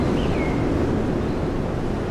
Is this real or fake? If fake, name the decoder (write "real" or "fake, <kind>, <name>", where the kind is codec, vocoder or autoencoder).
real